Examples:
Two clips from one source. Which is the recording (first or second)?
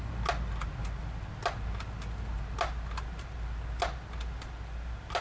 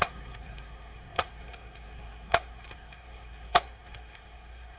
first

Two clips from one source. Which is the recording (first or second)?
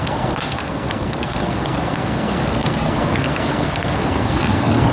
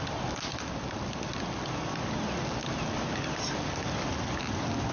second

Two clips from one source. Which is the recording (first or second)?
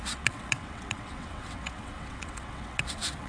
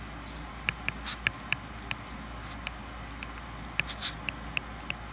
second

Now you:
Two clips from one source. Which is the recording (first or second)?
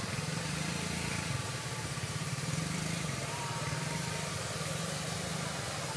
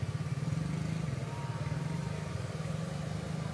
second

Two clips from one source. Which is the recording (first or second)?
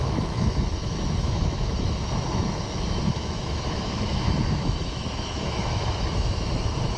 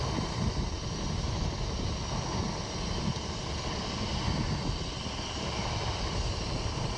second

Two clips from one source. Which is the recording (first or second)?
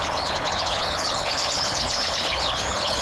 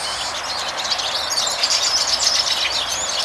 second